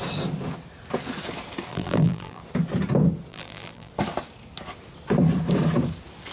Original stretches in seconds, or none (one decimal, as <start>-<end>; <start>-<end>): 0.0-1.7; 2.4-3.3; 3.9-6.3